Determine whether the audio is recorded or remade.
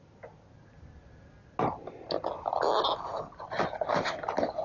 recorded